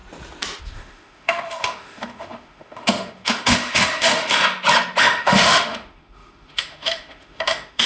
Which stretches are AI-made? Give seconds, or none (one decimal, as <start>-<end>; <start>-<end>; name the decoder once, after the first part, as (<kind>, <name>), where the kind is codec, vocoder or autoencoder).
0.6-4.4 (autoencoder, DAC-VAE); 5.0-7.9